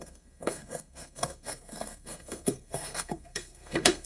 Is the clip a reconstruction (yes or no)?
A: yes